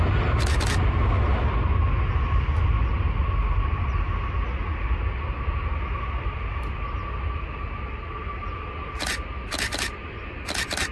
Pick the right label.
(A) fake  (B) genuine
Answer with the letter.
B